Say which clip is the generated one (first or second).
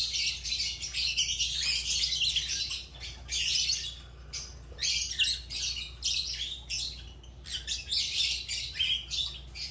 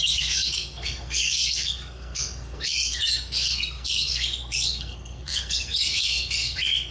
second